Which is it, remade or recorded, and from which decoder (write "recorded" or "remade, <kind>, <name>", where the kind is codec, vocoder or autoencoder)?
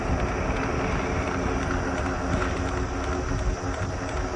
recorded